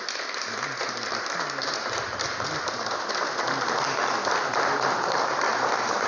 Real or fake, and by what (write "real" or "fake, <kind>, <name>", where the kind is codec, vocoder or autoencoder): fake, vocoder, BigVGAN v2